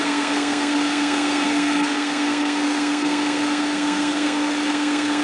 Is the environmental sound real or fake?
fake